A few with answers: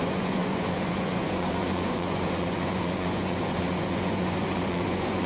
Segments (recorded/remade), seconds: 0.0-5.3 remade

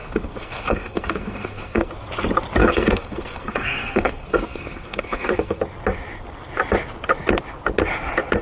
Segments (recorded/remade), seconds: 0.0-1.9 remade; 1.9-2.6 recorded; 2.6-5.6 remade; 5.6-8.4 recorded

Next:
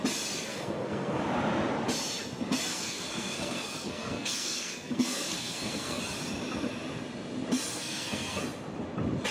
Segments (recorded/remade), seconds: 0.0-0.5 recorded; 0.5-1.2 remade; 1.2-2.7 recorded; 2.7-6.0 remade; 6.0-7.7 recorded; 7.7-8.4 remade; 8.4-9.3 recorded

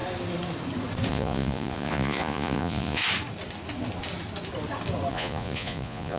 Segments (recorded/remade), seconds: 0.0-1.1 recorded; 1.1-3.0 remade; 3.0-5.1 recorded; 5.1-6.2 remade

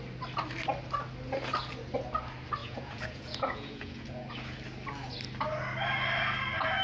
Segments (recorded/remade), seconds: 0.0-2.6 recorded; 2.6-4.3 remade; 4.3-6.8 recorded

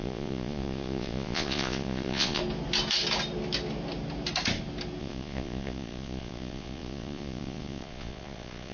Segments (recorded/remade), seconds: 0.0-2.4 remade; 2.4-5.0 recorded; 5.0-8.7 remade

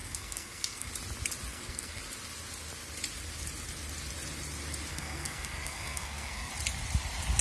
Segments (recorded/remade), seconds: 0.0-0.9 remade; 0.9-1.5 recorded; 1.5-2.0 remade; 2.0-4.9 recorded; 4.9-6.5 remade; 6.5-7.4 recorded